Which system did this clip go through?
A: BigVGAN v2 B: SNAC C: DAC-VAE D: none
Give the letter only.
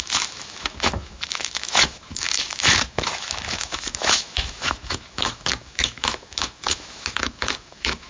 C